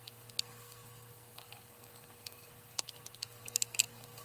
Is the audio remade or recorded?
remade